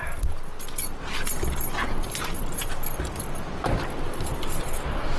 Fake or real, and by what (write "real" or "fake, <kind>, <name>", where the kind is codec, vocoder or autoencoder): real